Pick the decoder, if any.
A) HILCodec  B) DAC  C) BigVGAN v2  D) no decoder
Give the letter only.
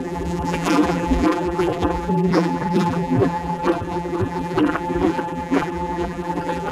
C